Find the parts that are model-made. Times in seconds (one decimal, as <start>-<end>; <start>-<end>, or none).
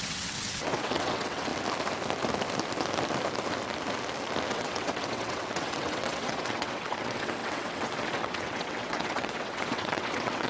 0.0-1.5; 4.5-10.5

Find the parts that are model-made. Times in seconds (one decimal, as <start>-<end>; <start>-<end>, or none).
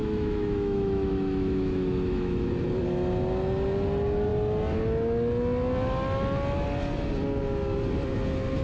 0.0-2.5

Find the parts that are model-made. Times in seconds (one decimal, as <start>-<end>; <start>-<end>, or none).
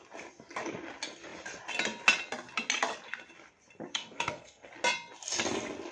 3.9-4.7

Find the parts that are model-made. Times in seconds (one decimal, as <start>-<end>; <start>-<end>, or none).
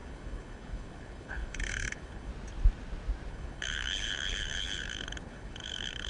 0.0-2.3; 3.3-6.1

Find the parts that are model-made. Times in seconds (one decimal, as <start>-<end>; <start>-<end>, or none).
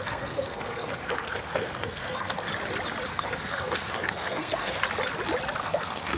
0.0-2.5; 3.1-4.8; 5.6-6.2